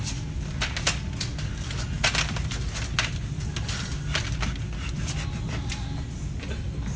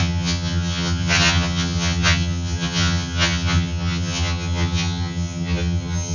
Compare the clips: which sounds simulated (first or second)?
second